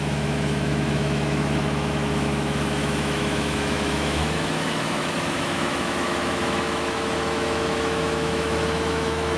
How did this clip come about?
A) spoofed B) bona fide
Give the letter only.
A